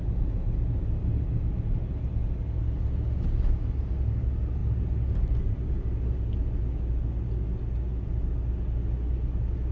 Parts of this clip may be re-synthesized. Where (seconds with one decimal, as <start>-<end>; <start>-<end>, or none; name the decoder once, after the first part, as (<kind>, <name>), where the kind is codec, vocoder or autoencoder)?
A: none